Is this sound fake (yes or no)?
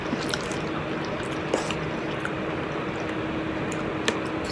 no